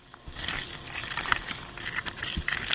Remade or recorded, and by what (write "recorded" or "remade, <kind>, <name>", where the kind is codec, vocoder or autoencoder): recorded